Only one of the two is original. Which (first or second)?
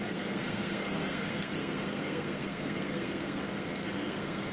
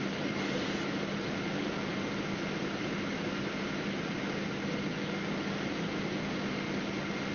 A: second